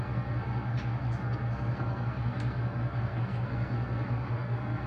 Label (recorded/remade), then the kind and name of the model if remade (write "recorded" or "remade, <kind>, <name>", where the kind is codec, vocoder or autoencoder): remade, codec, SNAC